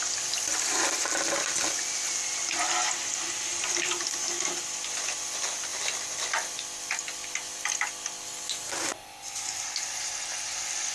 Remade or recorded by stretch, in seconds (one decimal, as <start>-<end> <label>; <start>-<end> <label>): 0.0-10.9 recorded

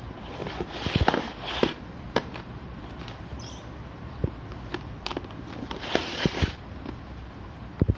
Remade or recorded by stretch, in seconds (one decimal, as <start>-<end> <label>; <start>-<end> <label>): 0.0-0.4 remade; 0.4-1.0 recorded; 1.0-2.8 remade; 2.8-5.6 recorded; 5.6-8.0 remade

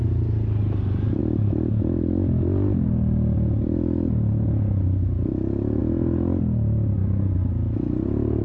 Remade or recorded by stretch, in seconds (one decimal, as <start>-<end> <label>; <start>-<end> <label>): 0.0-8.4 recorded

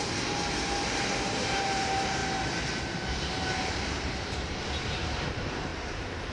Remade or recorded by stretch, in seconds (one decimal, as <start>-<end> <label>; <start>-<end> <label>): 0.0-2.2 remade; 2.2-2.8 recorded; 2.8-6.3 remade

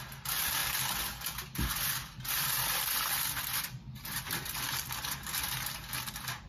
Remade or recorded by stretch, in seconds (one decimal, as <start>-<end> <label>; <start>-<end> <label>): 0.0-0.6 recorded; 0.6-4.5 remade; 4.5-6.5 recorded

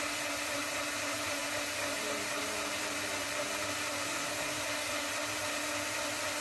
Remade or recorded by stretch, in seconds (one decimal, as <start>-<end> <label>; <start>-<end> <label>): 0.0-6.4 remade

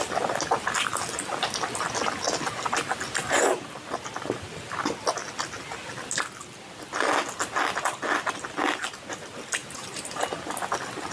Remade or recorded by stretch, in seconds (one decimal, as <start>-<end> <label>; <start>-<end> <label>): 0.0-9.6 recorded; 9.6-10.3 remade; 10.3-11.1 recorded